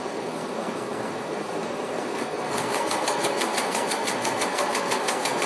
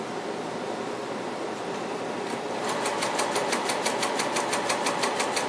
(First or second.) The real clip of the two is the second